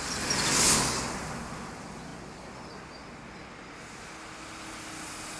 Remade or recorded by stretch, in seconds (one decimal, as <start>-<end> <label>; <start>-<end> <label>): 0.0-5.4 recorded